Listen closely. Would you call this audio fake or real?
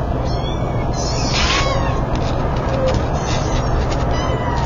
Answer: real